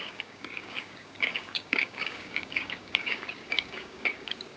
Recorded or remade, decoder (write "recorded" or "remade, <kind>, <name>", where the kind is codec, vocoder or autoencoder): remade, codec, DAC